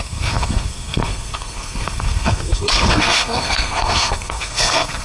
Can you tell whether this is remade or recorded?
remade